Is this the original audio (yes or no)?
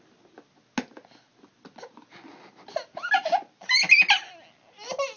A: yes